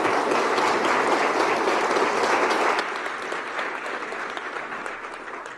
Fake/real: real